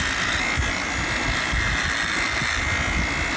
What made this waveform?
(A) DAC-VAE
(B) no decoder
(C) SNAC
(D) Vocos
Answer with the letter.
B